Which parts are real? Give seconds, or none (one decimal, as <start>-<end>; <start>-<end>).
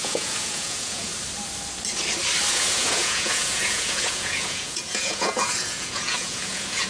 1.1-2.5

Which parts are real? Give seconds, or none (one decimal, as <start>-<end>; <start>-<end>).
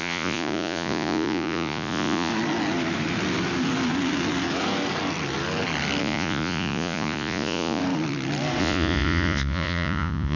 2.3-6.0; 7.8-8.6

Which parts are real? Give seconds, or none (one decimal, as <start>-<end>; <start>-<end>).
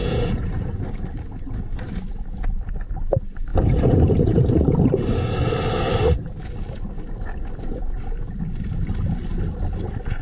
0.8-10.2